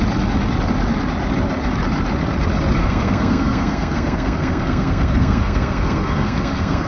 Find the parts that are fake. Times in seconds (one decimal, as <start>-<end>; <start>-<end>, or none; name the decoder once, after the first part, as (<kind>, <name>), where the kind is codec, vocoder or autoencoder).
2.8-6.9 (codec, SNAC)